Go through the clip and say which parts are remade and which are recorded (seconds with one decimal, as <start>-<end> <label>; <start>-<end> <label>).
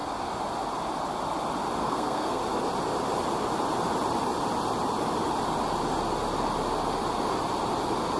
0.0-1.8 recorded; 1.8-2.4 remade; 2.4-8.2 recorded